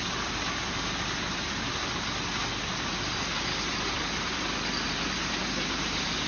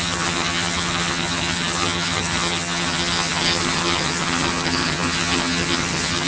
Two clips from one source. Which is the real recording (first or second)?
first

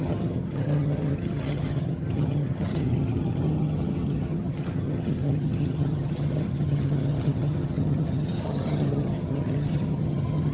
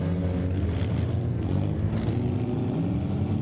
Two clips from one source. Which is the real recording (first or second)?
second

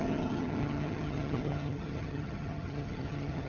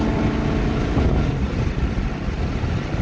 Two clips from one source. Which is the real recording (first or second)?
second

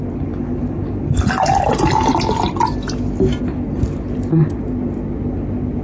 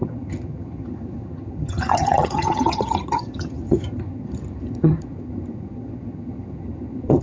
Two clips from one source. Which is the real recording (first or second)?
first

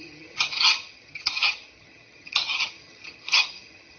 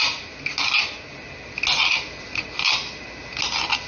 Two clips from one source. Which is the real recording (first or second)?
second